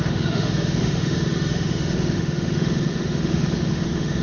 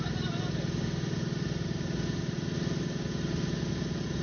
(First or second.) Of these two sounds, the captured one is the second